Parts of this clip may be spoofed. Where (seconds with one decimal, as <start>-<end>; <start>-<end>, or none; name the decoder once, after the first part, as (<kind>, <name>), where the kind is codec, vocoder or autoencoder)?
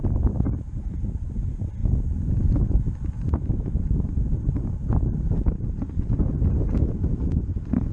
none